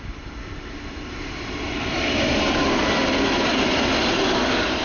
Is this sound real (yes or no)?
yes